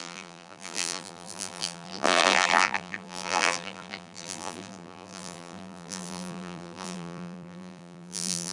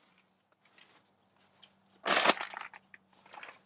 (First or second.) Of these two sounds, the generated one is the first